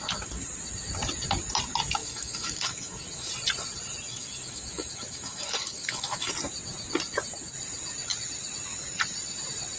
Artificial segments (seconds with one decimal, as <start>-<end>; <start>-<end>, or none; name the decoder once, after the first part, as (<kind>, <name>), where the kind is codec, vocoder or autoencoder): 2.0-3.3 (autoencoder, DAC-VAE); 4.1-6.3